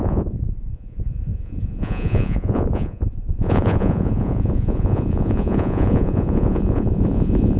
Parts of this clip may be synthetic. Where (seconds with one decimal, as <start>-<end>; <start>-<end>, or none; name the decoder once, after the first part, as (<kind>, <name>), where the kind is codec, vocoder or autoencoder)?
0.0-7.6 (vocoder, Vocos)